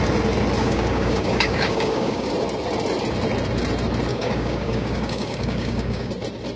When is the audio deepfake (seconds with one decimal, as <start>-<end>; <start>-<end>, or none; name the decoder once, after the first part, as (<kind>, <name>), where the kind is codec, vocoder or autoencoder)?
0.6-2.3 (codec, DAC); 4.1-6.1